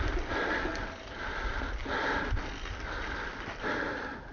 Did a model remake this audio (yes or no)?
no